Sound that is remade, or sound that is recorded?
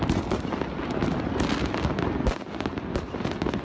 recorded